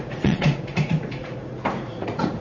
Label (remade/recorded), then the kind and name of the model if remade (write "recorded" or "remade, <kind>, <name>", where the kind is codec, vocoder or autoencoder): remade, vocoder, Vocos